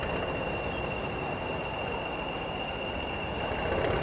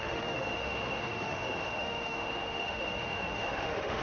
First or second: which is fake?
second